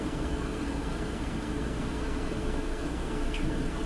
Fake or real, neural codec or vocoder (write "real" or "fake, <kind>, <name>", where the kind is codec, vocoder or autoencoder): fake, codec, SNAC